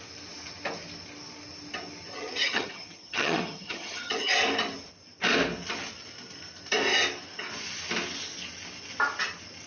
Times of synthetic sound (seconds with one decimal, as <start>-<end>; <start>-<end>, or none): 2.1-4.3